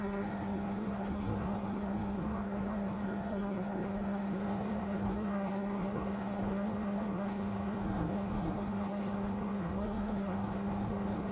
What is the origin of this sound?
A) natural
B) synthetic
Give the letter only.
B